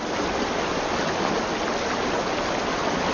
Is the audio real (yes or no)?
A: yes